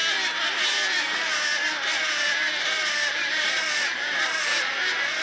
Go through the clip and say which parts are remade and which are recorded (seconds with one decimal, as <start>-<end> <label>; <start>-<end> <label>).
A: 0.0-1.9 recorded; 1.9-5.2 remade